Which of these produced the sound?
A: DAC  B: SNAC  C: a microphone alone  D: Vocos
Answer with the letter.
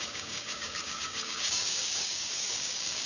A